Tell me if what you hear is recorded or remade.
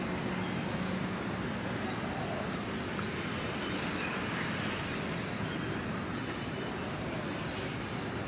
recorded